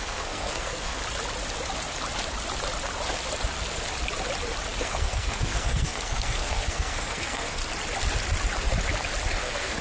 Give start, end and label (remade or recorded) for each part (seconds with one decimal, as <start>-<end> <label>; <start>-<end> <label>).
0.0-1.0 remade; 1.0-4.8 recorded; 4.8-7.6 remade; 7.6-9.3 recorded; 9.3-9.8 remade